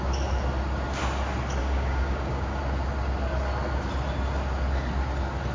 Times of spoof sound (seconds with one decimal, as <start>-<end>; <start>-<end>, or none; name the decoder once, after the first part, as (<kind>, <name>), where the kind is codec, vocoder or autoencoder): 1.6-2.6 (codec, DAC)